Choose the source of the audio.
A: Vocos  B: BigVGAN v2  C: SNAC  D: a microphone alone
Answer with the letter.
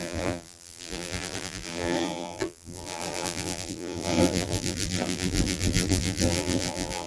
B